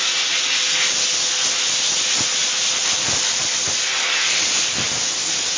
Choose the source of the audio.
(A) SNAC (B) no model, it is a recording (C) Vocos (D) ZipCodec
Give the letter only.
B